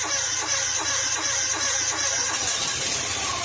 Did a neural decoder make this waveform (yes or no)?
no